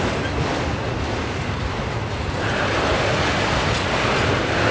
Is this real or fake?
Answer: real